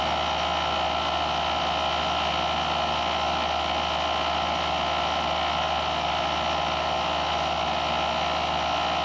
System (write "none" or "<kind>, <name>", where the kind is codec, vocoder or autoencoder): none